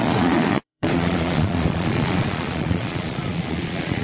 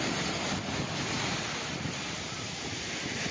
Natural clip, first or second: second